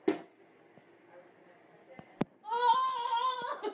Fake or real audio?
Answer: real